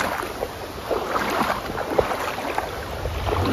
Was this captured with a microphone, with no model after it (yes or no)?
yes